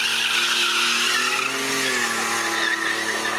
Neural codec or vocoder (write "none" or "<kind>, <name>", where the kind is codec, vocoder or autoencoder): none